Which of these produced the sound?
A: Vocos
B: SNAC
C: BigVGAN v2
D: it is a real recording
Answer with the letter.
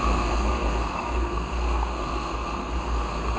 B